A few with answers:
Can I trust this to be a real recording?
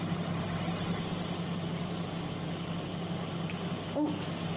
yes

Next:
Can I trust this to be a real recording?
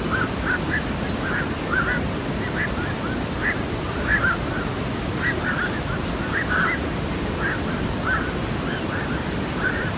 yes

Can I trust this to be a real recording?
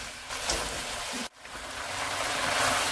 yes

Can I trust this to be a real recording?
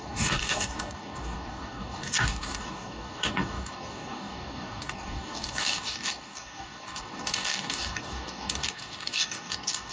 no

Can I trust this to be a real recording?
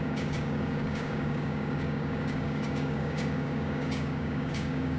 no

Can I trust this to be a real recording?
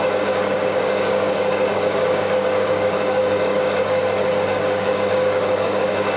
no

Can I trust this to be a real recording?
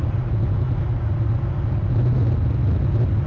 yes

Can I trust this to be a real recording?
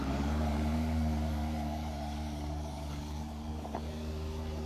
no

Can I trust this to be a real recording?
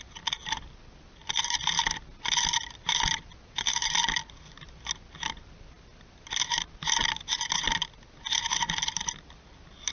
yes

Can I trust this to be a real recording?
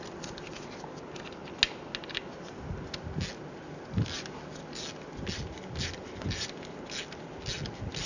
yes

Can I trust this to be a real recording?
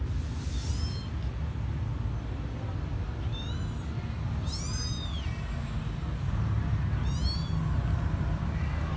yes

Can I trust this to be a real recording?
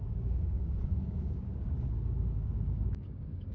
no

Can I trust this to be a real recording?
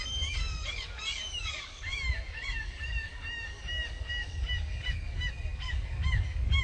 no